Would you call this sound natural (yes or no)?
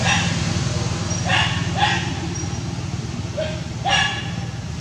yes